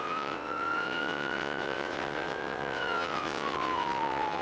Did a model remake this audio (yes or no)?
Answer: yes